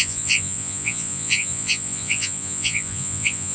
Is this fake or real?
fake